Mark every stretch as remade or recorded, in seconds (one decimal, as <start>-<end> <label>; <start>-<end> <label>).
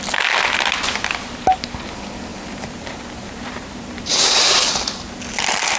0.0-2.3 recorded; 2.3-5.8 remade